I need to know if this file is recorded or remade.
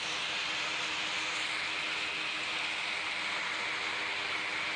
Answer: recorded